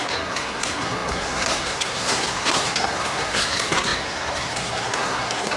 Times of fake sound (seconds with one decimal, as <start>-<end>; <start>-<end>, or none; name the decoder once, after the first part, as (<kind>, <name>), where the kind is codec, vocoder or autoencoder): 0.0-5.6 (codec, SNAC)